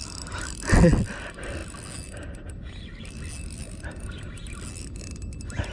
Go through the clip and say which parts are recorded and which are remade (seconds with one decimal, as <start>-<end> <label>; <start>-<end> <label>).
0.0-5.7 recorded